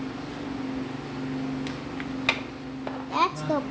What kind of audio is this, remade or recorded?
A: recorded